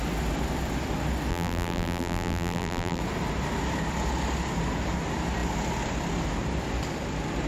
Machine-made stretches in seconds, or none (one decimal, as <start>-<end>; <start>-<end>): 1.3-3.0